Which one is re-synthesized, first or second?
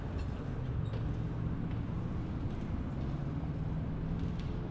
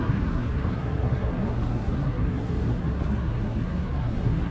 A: second